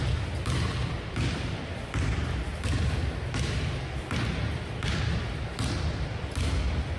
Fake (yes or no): no